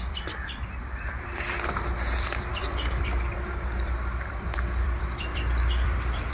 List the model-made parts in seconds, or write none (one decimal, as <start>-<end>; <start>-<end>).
0.0-6.3